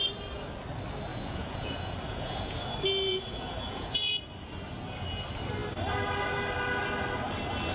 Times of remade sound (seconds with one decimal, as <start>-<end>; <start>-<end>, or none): 1.1-2.6; 3.1-4.1